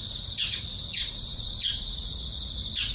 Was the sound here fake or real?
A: fake